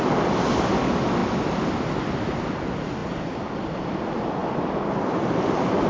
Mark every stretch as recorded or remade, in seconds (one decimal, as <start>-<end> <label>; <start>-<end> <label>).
0.0-5.9 recorded